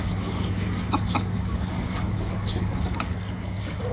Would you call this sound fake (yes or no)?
yes